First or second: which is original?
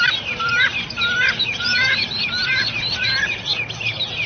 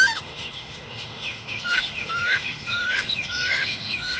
first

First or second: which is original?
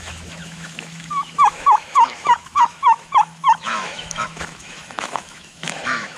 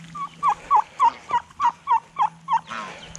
second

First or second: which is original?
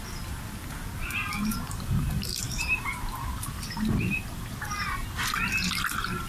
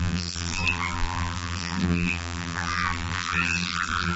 first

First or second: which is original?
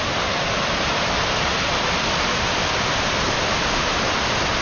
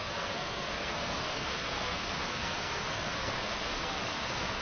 first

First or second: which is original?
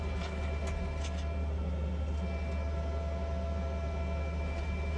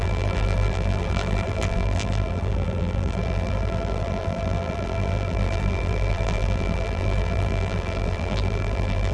first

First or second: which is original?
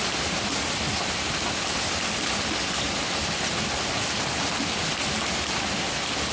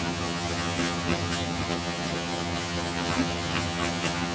first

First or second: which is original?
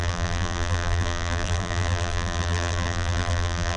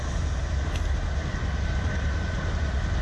second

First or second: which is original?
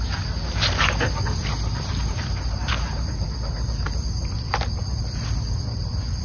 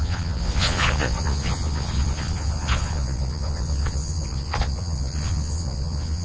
first